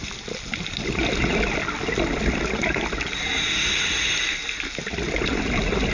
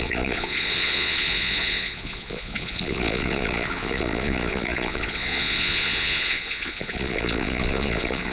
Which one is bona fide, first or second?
first